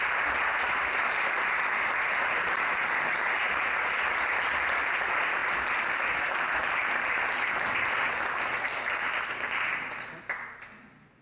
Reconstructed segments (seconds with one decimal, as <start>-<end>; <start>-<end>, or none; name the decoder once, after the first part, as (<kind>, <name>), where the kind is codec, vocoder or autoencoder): none